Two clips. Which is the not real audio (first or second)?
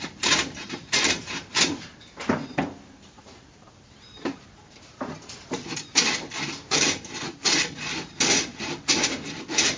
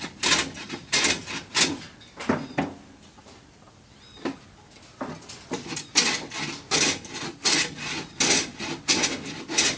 first